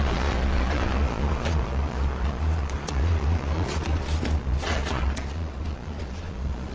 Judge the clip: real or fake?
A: fake